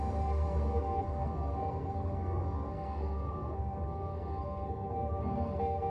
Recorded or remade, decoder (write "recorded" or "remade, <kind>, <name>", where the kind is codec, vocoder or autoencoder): remade, codec, SNAC